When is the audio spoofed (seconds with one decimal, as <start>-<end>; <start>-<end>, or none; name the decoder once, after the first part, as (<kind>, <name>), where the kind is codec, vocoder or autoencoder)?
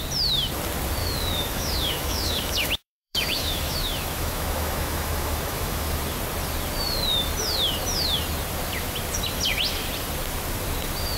1.0-5.8 (autoencoder, DAC-VAE)